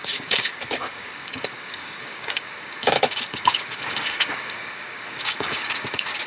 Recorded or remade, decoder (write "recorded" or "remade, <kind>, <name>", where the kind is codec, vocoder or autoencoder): remade, codec, DAC